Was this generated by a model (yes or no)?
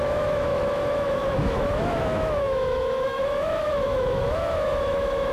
yes